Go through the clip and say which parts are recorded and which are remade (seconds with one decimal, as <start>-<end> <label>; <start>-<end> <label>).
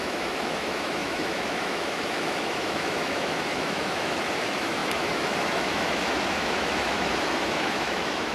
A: 0.0-8.3 remade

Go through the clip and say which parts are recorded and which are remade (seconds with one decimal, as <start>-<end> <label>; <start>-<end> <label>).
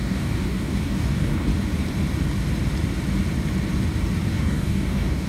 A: 0.0-1.5 remade; 1.5-4.3 recorded; 4.3-5.3 remade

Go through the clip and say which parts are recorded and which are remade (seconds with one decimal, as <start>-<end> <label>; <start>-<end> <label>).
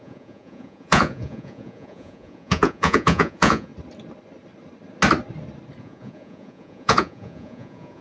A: 0.0-3.7 remade; 3.7-5.8 recorded; 5.8-8.0 remade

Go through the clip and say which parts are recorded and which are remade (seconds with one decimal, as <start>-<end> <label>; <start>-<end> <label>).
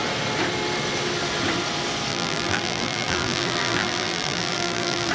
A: 0.0-2.1 recorded; 2.1-5.1 remade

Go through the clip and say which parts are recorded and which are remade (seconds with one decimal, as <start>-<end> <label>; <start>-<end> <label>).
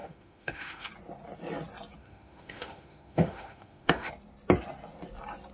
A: 0.0-0.9 remade; 0.9-2.0 recorded; 2.0-4.1 remade; 4.1-5.5 recorded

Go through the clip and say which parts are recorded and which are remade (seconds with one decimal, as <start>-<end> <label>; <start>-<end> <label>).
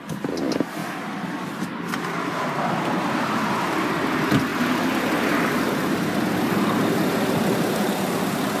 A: 0.0-4.5 recorded; 4.5-6.4 remade; 6.4-8.6 recorded